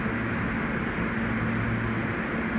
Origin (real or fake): real